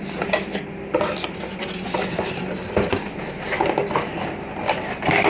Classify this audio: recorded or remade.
recorded